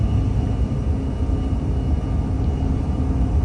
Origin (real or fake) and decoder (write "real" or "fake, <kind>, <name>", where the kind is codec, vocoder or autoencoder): real